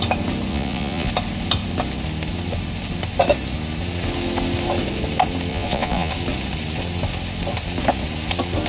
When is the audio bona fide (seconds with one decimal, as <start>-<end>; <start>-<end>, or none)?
0.0-0.5; 1.1-5.5; 6.1-8.7